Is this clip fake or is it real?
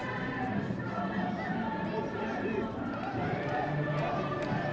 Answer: fake